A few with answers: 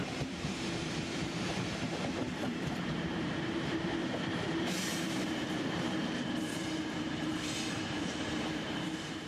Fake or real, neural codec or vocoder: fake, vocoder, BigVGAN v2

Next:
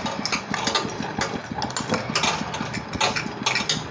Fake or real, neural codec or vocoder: real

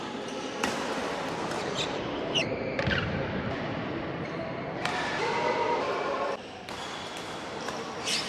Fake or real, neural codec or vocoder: fake, vocoder, BigVGAN v2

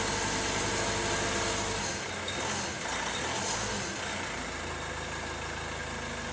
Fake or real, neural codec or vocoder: real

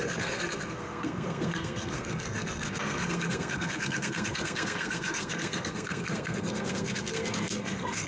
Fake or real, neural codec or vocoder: fake, codec, SNAC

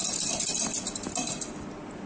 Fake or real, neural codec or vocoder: real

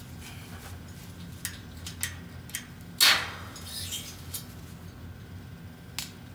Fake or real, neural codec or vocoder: real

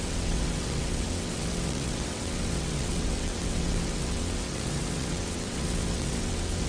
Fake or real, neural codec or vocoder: fake, vocoder, WaveNeXt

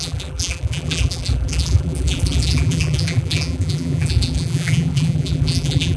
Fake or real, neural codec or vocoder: fake, vocoder, BigVGAN v2